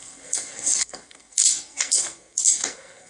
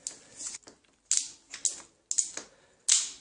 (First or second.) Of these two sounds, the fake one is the first